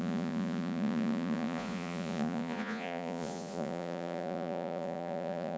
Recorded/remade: remade